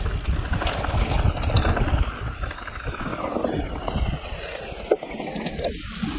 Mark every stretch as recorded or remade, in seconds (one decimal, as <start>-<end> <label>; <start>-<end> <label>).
0.0-6.2 recorded